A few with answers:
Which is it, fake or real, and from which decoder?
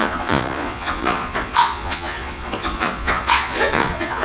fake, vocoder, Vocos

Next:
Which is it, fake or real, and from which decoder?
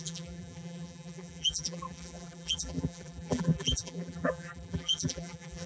fake, vocoder, BigVGAN v2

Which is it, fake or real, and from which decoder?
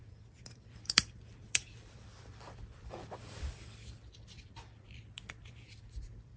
fake, vocoder, BigVGAN v2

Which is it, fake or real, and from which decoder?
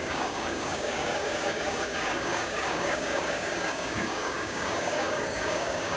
fake, codec, DAC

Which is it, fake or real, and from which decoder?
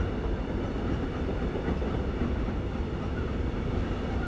real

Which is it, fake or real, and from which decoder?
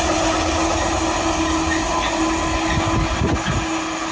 real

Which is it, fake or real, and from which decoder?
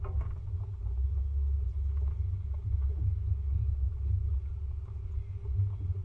real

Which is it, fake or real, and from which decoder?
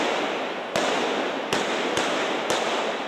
real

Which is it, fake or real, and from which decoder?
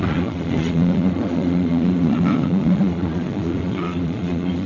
fake, vocoder, Vocos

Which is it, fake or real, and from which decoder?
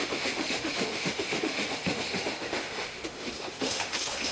fake, autoencoder, DAC-VAE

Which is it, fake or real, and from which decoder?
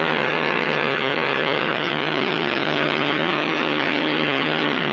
fake, vocoder, HiFi-GAN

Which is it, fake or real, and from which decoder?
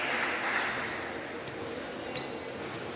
real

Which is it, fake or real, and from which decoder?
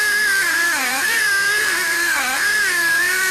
fake, codec, SNAC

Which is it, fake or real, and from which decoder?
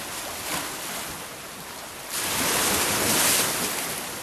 real